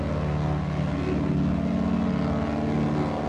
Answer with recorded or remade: recorded